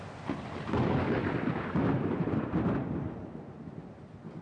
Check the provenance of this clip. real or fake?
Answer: fake